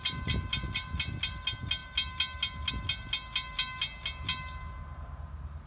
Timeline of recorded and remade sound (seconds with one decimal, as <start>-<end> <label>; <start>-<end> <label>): 0.0-5.7 recorded